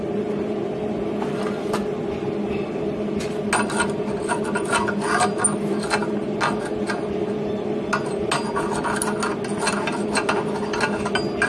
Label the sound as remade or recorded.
recorded